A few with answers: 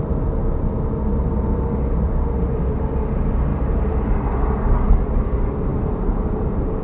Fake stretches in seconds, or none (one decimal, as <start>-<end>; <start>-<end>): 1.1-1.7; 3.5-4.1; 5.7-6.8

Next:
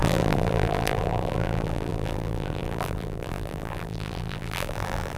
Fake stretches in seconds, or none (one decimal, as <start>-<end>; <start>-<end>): 0.0-5.2

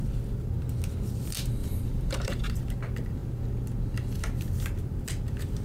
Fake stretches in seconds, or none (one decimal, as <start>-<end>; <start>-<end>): 1.6-2.7

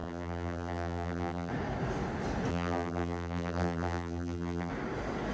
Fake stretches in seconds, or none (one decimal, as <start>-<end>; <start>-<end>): 0.0-1.5; 2.5-4.7

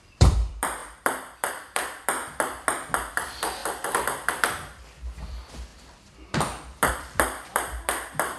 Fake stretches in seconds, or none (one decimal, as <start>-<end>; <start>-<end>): 0.0-2.2; 3.1-8.4

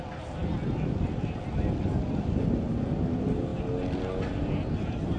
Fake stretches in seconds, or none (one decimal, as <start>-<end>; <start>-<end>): none

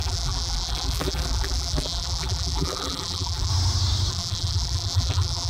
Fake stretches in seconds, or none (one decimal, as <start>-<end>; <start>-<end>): 0.0-3.5; 4.1-5.5

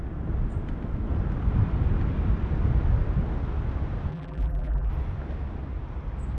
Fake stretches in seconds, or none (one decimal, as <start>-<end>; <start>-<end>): 4.1-4.9